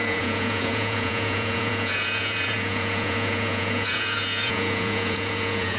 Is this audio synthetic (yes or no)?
yes